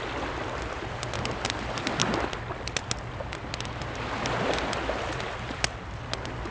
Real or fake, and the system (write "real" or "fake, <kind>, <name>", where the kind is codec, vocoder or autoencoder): real